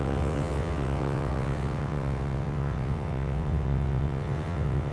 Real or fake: fake